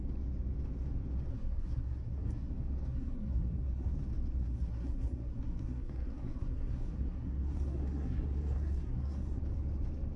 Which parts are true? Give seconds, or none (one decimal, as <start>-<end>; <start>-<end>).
0.0-1.3; 2.5-2.9; 3.9-4.4; 9.4-10.2